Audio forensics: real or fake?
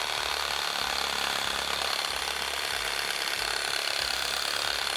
real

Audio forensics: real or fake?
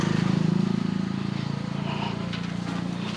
real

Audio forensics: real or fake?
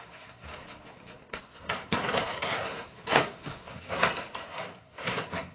fake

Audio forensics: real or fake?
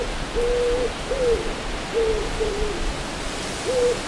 real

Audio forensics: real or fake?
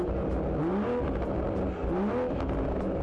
real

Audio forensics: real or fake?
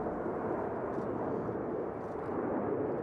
real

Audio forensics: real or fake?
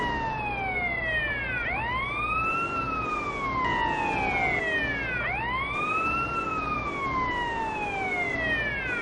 real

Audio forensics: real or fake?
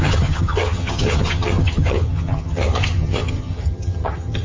fake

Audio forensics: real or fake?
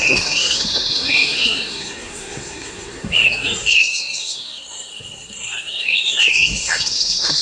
fake